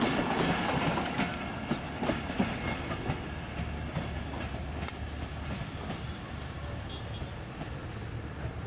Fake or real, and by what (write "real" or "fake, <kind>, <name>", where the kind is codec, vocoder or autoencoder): real